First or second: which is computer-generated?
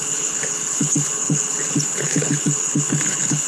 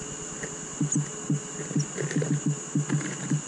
first